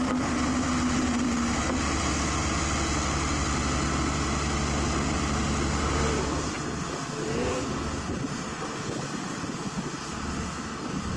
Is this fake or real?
real